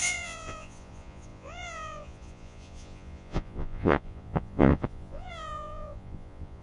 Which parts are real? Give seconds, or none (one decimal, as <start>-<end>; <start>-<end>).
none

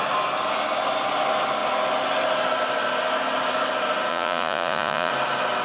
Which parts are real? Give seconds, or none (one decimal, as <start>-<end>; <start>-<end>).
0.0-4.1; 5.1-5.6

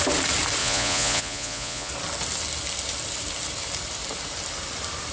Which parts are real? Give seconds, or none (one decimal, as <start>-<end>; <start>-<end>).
0.0-0.6; 1.9-5.1